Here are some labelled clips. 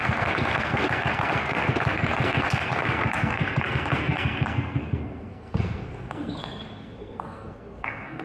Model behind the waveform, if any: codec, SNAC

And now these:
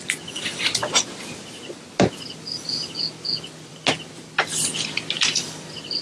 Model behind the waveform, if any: none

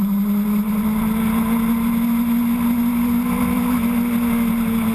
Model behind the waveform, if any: none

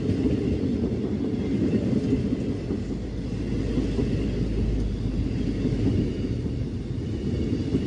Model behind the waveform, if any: none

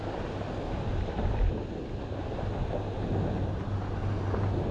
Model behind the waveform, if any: none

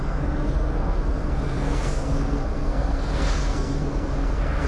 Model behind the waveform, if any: codec, SNAC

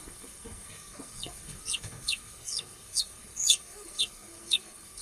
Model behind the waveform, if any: codec, SNAC